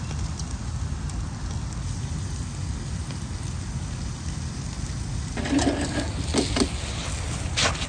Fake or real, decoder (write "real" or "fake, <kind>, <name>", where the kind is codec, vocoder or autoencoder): real